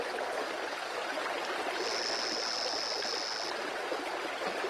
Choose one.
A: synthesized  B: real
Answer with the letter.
B